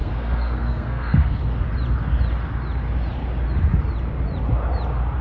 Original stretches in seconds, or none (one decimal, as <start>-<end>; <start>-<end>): 1.4-5.2